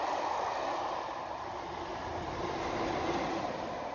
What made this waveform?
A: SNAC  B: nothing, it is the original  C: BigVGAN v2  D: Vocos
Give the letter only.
B